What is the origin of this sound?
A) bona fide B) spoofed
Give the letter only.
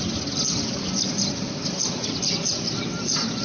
A